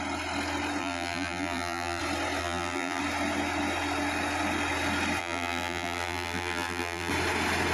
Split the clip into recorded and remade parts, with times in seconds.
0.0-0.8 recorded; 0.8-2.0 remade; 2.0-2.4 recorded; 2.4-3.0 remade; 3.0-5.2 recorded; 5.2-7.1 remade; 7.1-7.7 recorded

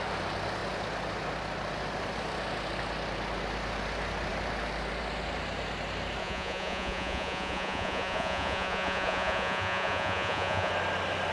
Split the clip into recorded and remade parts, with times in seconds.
0.0-6.2 recorded; 6.2-10.7 remade; 10.7-11.3 recorded

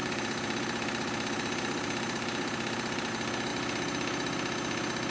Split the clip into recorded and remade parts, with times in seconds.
0.0-3.1 remade; 3.1-5.1 recorded